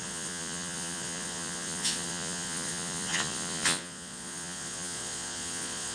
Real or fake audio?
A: fake